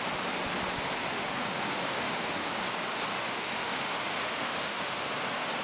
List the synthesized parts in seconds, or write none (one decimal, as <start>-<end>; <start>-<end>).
1.1-2.5; 3.1-5.1